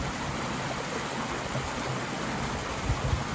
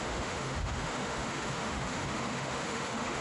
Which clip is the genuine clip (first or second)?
first